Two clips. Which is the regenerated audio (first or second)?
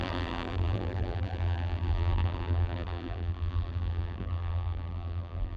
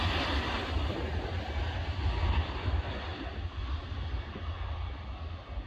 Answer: first